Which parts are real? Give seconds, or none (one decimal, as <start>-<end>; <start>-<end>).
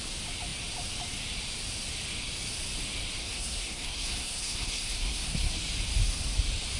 0.0-3.2; 5.5-6.8